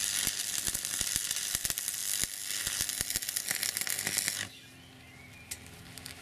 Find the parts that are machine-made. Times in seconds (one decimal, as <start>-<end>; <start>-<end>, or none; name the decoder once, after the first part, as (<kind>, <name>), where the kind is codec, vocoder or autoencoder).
none